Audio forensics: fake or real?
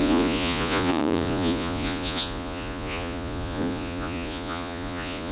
fake